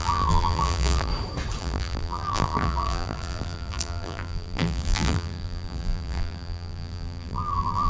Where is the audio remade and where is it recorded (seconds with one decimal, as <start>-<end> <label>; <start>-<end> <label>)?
0.0-1.1 remade; 1.1-1.6 recorded; 1.6-7.9 remade